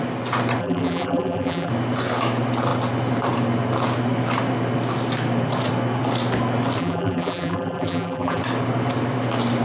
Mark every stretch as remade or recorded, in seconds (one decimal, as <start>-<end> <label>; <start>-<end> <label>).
0.0-0.6 recorded; 0.6-1.7 remade; 1.7-6.8 recorded; 6.8-8.4 remade; 8.4-9.6 recorded